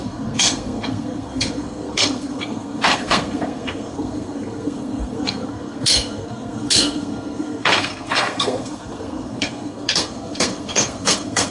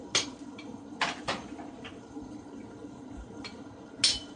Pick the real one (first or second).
second